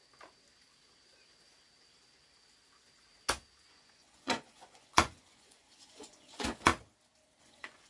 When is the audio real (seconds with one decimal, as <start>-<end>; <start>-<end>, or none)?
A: 0.0-3.7; 6.7-7.4